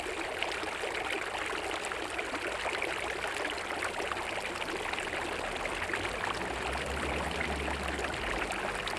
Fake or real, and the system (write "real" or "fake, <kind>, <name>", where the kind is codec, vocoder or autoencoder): real